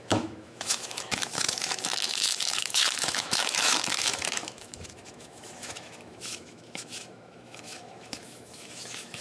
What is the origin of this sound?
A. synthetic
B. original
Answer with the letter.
A